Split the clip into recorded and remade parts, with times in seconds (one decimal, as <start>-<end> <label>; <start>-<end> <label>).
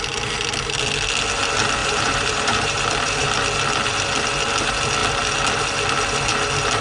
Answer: 0.0-1.8 recorded; 1.8-3.4 remade; 3.4-6.8 recorded